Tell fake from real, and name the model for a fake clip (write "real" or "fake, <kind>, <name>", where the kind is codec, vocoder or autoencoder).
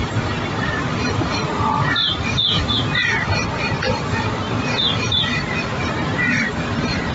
fake, vocoder, BigVGAN v2